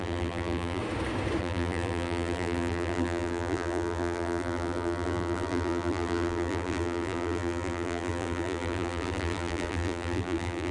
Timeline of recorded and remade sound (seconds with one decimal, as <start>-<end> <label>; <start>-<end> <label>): 0.0-0.8 remade; 0.8-1.4 recorded; 1.4-10.7 remade

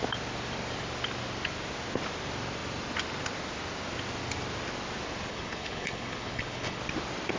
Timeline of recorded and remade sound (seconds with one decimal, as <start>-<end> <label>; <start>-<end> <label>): 0.0-5.3 recorded; 5.3-6.8 remade; 6.8-7.4 recorded